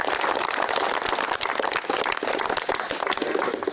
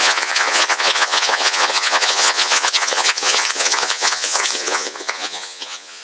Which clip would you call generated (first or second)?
second